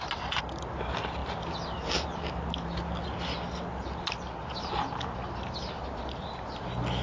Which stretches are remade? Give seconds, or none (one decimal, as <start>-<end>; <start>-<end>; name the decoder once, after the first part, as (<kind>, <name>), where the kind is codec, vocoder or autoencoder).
none